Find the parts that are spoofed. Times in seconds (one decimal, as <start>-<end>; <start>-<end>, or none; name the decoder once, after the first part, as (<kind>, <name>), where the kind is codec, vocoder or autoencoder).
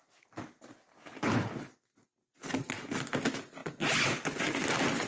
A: 0.9-1.7 (codec, HILCodec)